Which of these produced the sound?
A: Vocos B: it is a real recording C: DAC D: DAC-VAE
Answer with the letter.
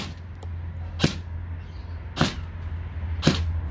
B